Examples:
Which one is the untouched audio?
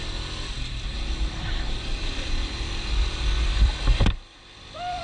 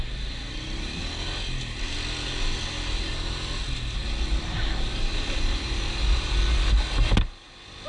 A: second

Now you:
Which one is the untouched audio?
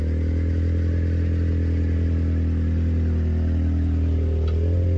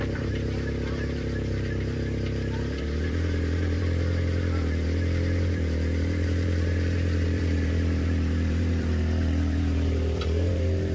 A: first